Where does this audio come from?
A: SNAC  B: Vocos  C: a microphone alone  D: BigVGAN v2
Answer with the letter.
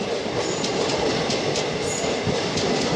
C